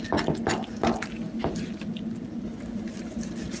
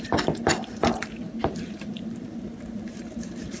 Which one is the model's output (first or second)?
second